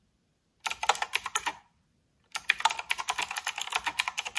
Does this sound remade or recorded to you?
recorded